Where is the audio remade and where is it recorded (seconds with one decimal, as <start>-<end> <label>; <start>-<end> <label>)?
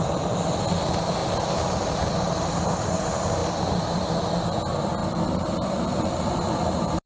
0.0-1.2 recorded; 1.2-2.4 remade; 2.4-5.0 recorded; 5.0-7.1 remade